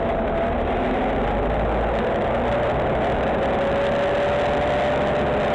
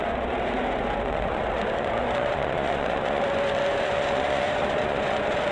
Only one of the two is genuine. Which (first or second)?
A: first